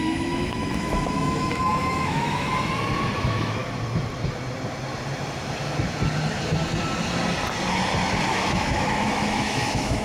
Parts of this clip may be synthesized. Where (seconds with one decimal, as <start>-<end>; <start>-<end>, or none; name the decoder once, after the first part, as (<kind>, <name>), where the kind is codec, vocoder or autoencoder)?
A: 0.0-2.5 (autoencoder, DAC-VAE); 3.2-3.6; 8.3-10.0